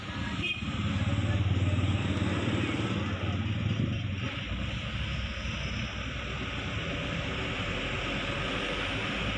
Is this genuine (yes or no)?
yes